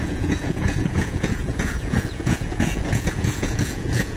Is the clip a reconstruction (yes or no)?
yes